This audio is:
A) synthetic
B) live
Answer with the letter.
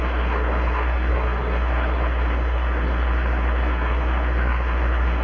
A